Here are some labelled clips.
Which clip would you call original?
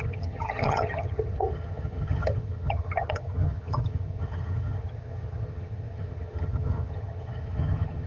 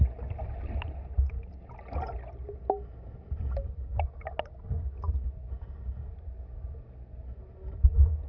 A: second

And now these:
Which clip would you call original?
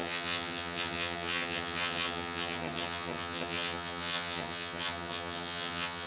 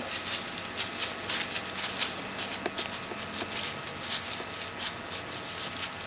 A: second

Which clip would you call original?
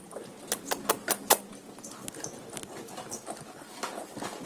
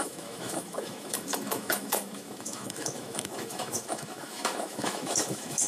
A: first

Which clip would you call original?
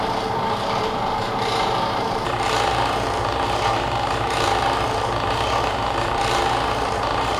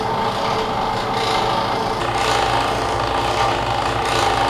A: second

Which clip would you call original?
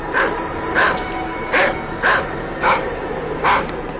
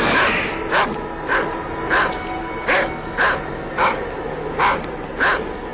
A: second